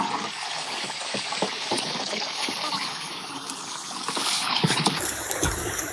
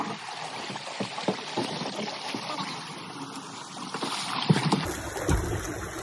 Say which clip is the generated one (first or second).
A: first